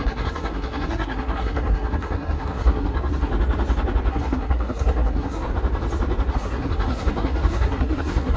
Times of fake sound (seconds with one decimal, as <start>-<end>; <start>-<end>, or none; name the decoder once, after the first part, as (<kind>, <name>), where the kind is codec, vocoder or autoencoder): 0.0-3.3 (codec, SNAC); 4.1-5.5; 6.3-8.4